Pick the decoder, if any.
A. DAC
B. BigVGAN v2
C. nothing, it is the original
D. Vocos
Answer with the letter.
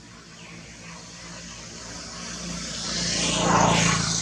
C